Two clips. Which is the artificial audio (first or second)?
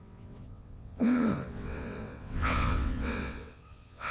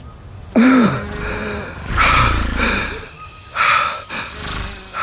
first